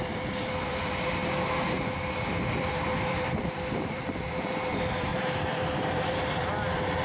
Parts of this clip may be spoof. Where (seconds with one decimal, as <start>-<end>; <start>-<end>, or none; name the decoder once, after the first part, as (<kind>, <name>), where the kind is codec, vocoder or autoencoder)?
0.0-1.2 (vocoder, BigVGAN v2); 2.5-5.1; 5.8-7.0